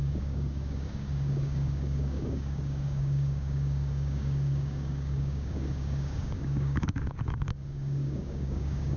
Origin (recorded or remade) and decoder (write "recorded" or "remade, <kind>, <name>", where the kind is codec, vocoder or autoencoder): remade, codec, DAC